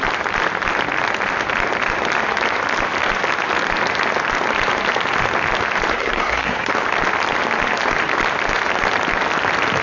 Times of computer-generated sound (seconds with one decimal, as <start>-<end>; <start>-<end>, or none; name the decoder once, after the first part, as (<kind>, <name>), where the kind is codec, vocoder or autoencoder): 5.9-6.7 (codec, SNAC)